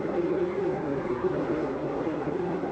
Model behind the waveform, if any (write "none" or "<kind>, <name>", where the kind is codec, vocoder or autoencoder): codec, SNAC